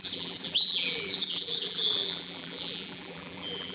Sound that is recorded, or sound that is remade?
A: remade